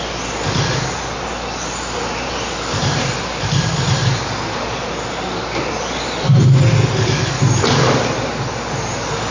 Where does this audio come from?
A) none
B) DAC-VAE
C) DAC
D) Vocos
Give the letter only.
A